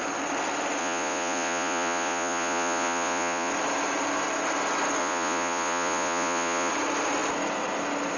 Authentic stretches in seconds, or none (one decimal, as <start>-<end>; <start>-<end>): 0.0-0.8; 3.5-5.0; 6.7-8.2

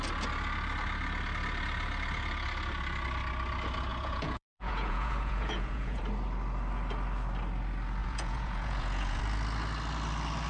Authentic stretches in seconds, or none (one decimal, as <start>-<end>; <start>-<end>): 0.0-3.9; 6.0-8.0; 9.2-10.5